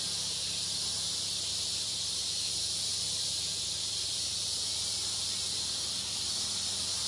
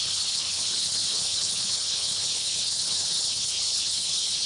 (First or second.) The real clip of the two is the first